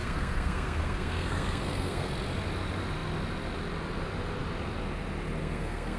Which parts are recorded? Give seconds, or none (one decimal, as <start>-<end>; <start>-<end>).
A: 2.1-5.4